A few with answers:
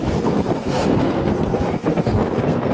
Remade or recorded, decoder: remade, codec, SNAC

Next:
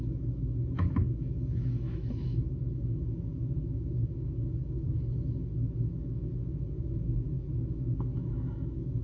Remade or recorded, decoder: remade, autoencoder, DAC-VAE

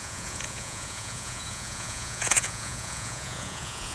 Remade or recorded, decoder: remade, vocoder, Vocos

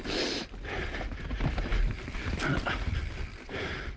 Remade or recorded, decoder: recorded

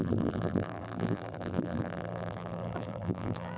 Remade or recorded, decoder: remade, vocoder, BigVGAN v2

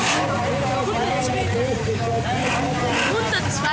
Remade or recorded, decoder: recorded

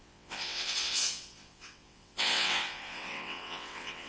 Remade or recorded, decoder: remade, vocoder, WaveNeXt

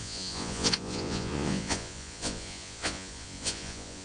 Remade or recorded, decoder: remade, vocoder, Vocos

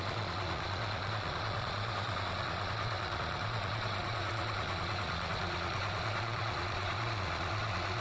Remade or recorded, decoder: remade, vocoder, Vocos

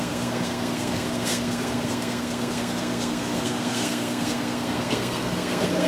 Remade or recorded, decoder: remade, codec, SNAC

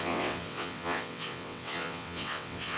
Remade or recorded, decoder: remade, vocoder, WaveNeXt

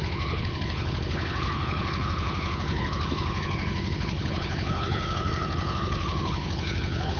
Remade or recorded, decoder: remade, codec, HILCodec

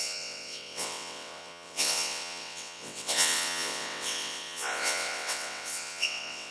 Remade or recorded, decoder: remade, vocoder, WaveNeXt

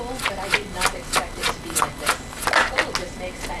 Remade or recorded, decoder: recorded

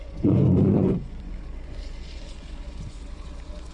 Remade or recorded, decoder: remade, vocoder, Vocos